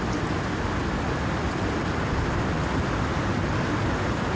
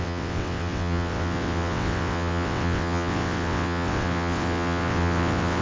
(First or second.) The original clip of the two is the first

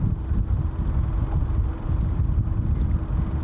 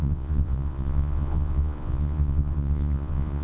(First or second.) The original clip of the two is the first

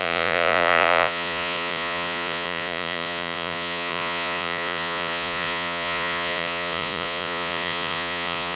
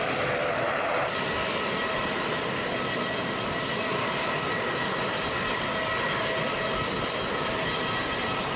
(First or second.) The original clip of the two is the second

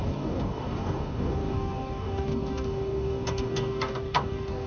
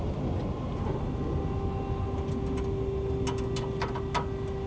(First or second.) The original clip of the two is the second